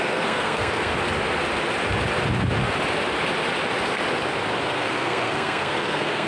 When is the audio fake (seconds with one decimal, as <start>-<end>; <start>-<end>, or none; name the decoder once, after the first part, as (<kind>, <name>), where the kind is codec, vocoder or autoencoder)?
0.0-0.9 (codec, SNAC); 4.7-6.3